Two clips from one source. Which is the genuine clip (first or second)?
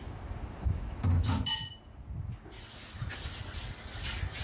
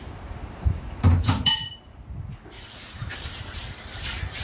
first